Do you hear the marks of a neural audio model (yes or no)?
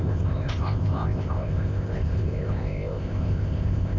yes